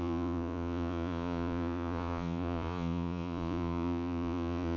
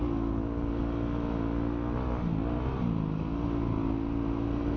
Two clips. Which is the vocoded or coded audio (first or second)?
first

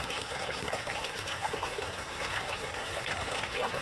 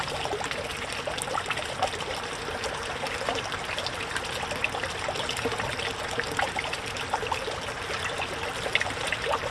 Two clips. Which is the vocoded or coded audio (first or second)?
first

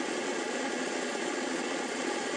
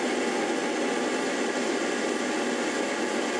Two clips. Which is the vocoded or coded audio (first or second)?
first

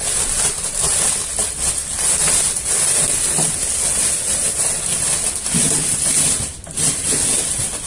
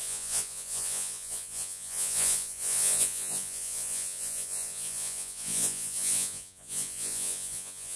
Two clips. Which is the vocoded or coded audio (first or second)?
second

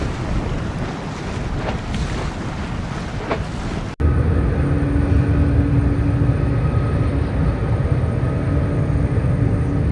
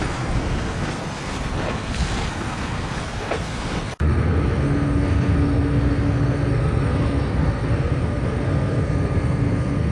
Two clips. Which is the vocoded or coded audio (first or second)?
second